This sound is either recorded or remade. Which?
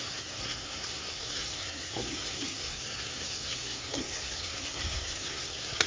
remade